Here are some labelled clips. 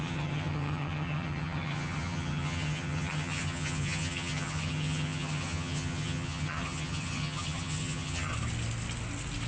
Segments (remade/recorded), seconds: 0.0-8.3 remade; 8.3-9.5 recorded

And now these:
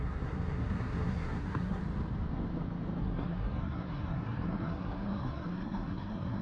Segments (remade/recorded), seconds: 0.0-1.8 remade; 1.8-3.0 recorded; 3.0-6.4 remade

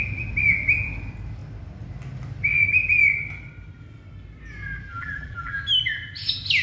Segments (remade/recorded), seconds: 0.0-4.9 recorded; 4.9-5.6 remade; 5.6-6.6 recorded